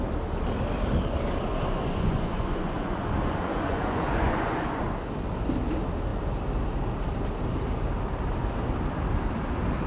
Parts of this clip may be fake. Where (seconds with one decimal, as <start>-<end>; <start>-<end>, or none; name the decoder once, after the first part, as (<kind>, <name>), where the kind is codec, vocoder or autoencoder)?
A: 1.5-4.8 (vocoder, Vocos)